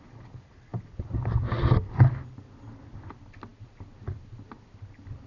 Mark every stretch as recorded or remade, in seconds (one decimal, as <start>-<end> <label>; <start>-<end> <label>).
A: 0.0-5.3 recorded